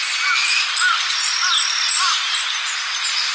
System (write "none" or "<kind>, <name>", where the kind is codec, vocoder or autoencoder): none